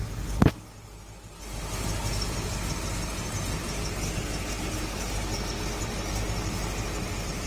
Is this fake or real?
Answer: real